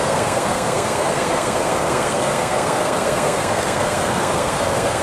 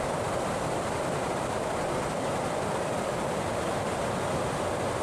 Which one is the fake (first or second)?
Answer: first